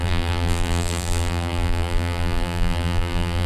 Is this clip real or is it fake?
fake